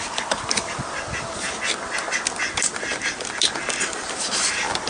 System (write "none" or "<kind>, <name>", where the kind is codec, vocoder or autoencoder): none